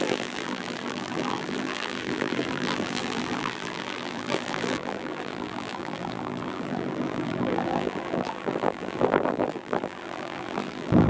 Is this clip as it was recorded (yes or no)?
no